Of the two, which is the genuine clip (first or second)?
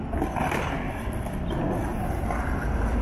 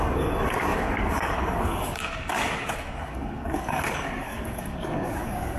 first